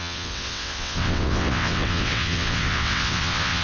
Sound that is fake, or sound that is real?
fake